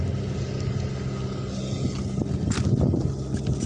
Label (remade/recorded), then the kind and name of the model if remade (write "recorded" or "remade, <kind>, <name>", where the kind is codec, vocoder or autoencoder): recorded